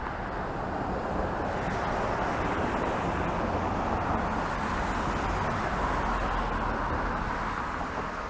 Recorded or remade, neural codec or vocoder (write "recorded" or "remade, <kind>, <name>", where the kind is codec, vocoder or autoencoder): recorded